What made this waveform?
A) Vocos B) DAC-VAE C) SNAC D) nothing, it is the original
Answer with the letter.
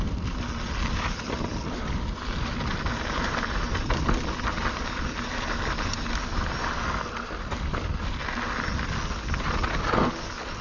D